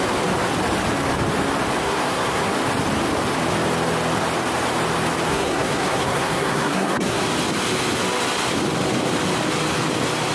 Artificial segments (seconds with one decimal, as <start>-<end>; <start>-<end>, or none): 1.8-2.5; 5.3-7.2